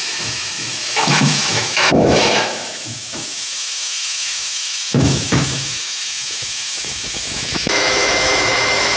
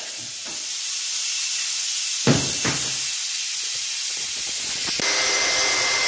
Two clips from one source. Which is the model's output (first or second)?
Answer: first